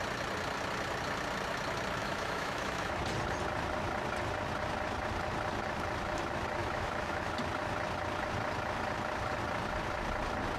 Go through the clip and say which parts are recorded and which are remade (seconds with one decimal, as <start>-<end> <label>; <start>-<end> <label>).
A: 0.0-2.0 recorded; 2.0-3.0 remade; 3.0-6.6 recorded; 6.6-7.2 remade; 7.2-10.6 recorded